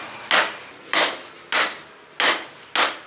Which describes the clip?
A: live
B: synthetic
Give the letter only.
A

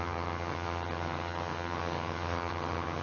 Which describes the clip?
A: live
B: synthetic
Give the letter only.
B